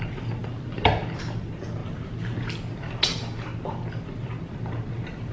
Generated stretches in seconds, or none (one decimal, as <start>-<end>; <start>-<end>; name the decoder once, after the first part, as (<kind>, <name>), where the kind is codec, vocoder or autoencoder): none